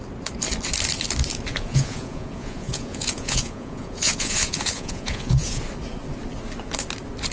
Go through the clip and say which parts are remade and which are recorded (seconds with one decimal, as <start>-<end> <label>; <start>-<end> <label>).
0.0-1.5 recorded; 1.5-5.6 remade; 5.6-7.3 recorded